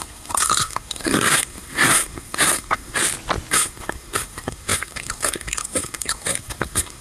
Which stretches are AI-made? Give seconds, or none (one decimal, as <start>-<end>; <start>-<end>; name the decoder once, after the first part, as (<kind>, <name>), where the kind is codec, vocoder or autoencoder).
0.0-3.0 (codec, SNAC); 3.5-7.0